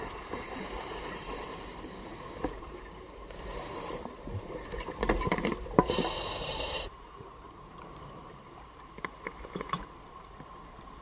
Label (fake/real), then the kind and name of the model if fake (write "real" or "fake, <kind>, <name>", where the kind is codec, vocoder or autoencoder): fake, vocoder, BigVGAN v2